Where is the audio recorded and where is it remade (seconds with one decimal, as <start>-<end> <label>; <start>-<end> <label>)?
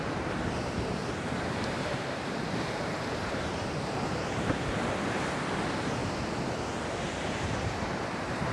0.0-6.0 remade; 6.0-7.0 recorded; 7.0-8.5 remade